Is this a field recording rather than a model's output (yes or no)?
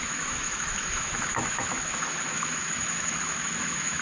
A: no